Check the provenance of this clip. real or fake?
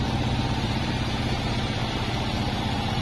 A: fake